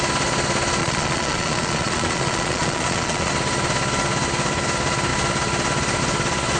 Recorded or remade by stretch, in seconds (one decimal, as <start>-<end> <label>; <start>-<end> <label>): 0.0-0.8 recorded; 0.8-3.3 remade; 3.3-6.6 recorded

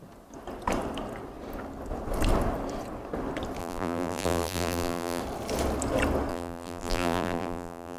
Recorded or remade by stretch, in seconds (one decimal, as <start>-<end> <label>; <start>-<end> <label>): 0.0-3.6 recorded; 3.6-5.2 remade; 5.2-6.3 recorded; 6.3-8.0 remade

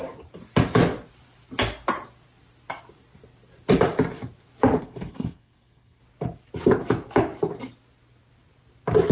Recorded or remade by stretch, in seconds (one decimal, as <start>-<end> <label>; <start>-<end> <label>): 0.0-4.8 recorded; 4.8-6.0 remade; 6.0-9.1 recorded

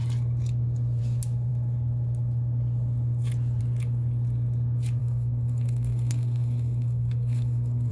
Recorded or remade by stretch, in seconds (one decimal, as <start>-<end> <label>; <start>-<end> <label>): 0.0-5.0 recorded; 5.0-7.9 remade

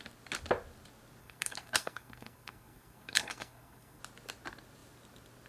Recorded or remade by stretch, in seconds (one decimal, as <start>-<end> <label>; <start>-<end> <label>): 0.0-1.2 recorded; 1.2-4.0 remade; 4.0-5.5 recorded